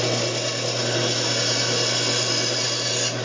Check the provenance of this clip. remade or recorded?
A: recorded